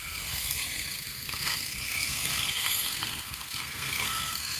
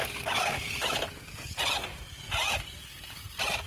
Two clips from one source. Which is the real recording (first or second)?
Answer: second